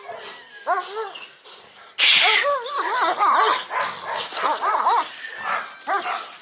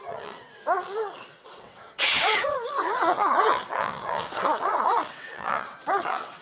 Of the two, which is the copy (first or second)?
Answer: second